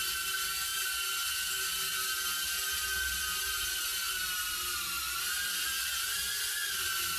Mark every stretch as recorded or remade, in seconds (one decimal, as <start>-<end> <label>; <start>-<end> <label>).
0.0-7.2 recorded